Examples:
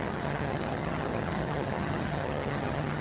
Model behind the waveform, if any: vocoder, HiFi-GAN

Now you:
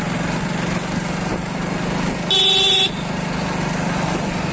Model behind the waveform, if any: none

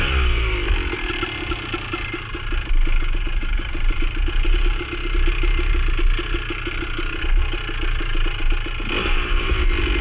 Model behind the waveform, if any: none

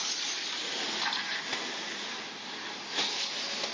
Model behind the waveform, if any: none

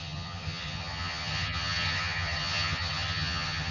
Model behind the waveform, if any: vocoder, HiFi-GAN